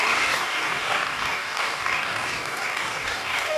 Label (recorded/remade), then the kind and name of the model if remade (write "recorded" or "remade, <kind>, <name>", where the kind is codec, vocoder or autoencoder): remade, codec, DAC